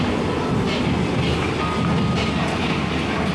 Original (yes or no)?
yes